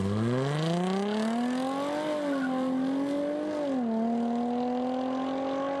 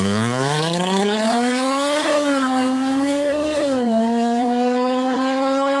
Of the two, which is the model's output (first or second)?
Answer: second